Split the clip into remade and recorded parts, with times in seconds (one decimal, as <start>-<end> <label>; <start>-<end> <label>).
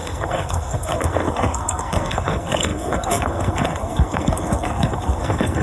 0.0-5.6 remade